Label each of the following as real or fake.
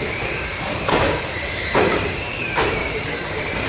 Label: fake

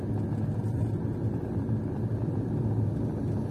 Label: real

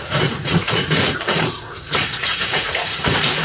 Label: fake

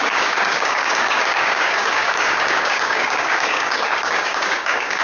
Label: fake